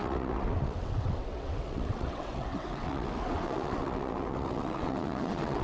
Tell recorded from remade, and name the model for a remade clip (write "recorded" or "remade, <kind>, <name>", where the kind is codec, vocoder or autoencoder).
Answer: remade, vocoder, WaveNeXt